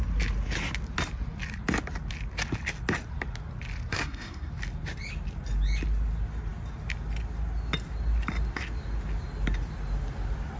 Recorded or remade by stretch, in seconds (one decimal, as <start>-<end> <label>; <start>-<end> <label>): 0.0-3.9 recorded; 3.9-4.5 remade; 4.5-10.6 recorded